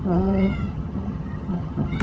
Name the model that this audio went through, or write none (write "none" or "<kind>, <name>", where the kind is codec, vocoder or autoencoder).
vocoder, HiFi-GAN